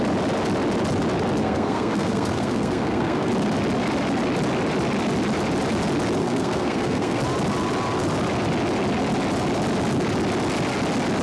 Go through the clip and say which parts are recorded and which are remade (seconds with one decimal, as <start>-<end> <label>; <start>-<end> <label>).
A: 0.0-1.4 recorded; 1.4-3.3 remade; 3.3-6.2 recorded; 6.2-7.2 remade; 7.2-11.2 recorded